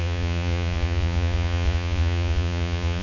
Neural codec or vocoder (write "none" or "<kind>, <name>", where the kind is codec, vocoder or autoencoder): vocoder, Vocos